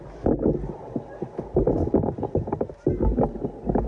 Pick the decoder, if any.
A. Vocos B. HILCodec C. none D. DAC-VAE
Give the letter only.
C